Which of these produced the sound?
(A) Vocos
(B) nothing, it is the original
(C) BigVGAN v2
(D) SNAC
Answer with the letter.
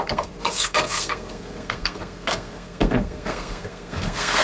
D